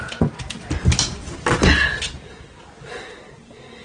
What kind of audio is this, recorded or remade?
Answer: recorded